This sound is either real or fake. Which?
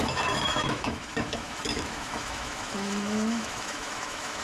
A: fake